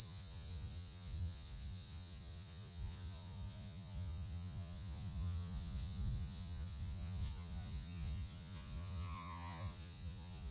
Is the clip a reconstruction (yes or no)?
yes